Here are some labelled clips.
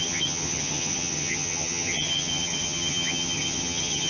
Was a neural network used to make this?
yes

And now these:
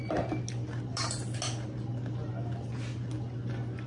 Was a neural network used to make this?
no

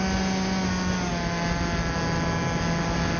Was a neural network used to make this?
no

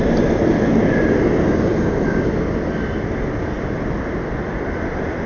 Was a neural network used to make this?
no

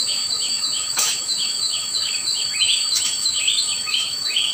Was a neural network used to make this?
yes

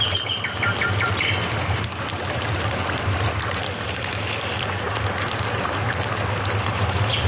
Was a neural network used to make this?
no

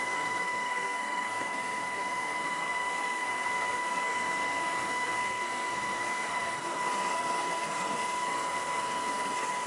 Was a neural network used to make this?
yes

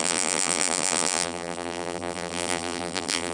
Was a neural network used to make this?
yes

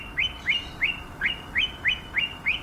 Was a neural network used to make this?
no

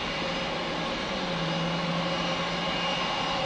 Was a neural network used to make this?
no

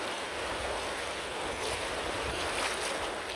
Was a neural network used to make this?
no